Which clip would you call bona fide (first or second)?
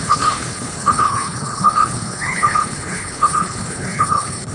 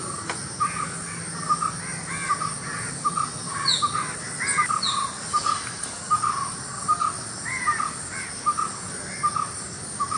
second